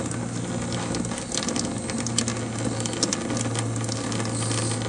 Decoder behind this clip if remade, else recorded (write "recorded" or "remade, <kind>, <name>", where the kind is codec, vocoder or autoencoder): recorded